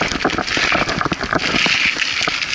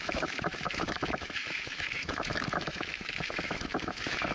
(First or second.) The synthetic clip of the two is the second